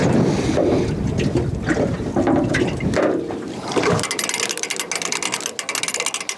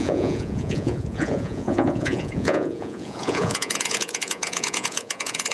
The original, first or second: first